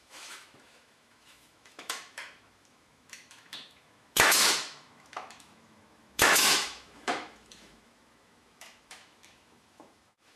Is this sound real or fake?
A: fake